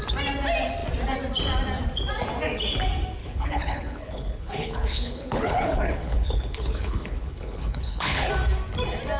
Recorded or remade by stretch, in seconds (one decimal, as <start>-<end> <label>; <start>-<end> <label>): 0.0-3.2 recorded; 3.2-8.3 remade; 8.3-9.2 recorded